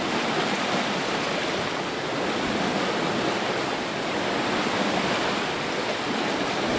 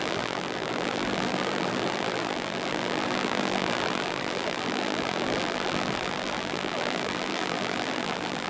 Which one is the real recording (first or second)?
first